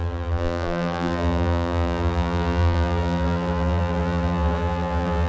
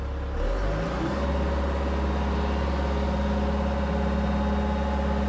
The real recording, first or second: second